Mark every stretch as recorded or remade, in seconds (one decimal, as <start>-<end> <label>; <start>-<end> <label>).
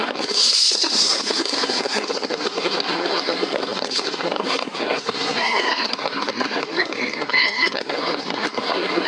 0.0-9.1 remade